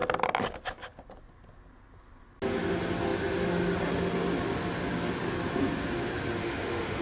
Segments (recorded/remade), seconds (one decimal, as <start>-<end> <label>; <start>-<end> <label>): 0.0-6.4 recorded; 6.4-7.0 remade